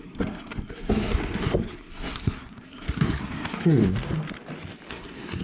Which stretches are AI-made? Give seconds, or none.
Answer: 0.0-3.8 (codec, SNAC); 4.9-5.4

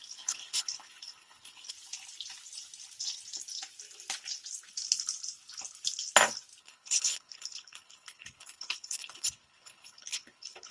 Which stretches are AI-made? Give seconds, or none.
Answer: 0.0-1.7 (codec, HILCodec); 6.6-10.7

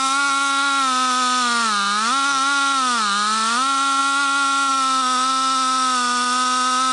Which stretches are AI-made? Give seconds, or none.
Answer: none

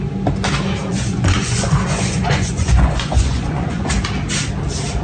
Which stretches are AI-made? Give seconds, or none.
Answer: 0.9-3.9 (vocoder, Vocos)